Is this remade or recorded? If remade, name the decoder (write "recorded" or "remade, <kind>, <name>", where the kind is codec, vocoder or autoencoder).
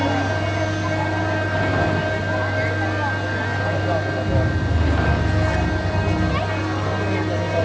recorded